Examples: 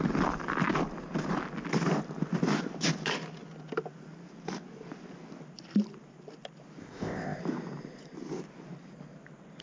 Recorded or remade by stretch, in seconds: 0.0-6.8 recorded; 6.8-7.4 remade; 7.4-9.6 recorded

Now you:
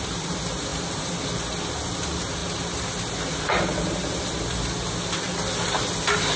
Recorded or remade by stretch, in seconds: 0.0-6.4 recorded

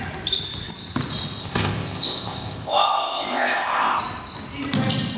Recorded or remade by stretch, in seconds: 0.0-1.4 recorded; 1.4-4.0 remade; 4.0-5.2 recorded

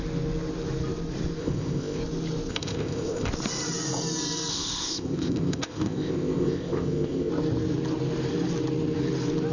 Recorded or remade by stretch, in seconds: 0.0-1.4 recorded; 1.4-2.0 remade; 2.0-2.5 recorded; 2.5-3.3 remade; 3.3-4.5 recorded; 4.5-7.3 remade; 7.3-9.5 recorded